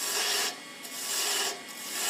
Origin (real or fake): fake